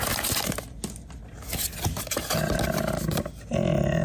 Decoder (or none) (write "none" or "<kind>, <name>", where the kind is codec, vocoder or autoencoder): none